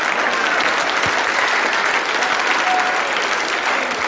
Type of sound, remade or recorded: recorded